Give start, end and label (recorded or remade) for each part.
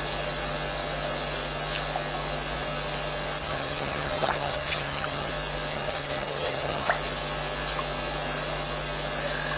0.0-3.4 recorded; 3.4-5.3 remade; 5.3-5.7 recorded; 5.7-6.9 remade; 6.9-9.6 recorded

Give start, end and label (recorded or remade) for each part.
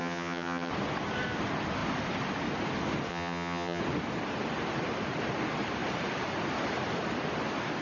0.0-0.7 remade; 0.7-3.1 recorded; 3.1-3.8 remade; 3.8-7.8 recorded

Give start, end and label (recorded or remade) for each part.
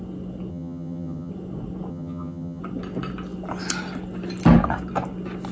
0.0-0.5 recorded; 0.5-1.3 remade; 1.3-1.9 recorded; 1.9-2.6 remade; 2.6-5.5 recorded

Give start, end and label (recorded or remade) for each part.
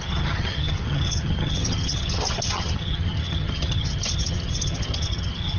0.0-5.6 remade